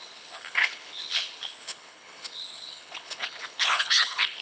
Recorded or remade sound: remade